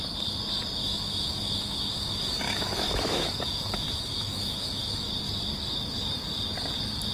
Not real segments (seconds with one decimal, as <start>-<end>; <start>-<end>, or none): 0.8-5.1